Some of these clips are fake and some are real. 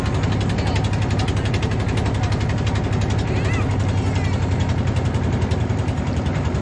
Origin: real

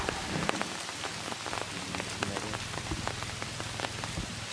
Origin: real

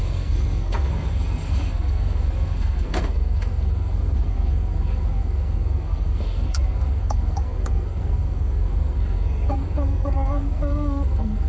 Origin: fake